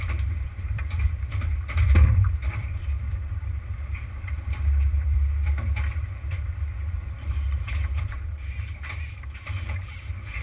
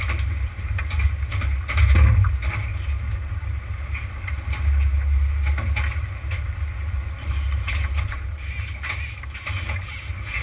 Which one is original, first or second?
second